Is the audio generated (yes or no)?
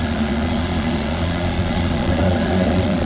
yes